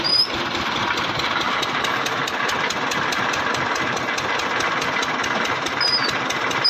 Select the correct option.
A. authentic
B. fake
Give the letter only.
A